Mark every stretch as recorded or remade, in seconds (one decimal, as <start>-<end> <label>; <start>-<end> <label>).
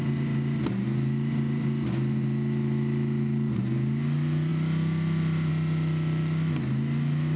0.0-7.4 recorded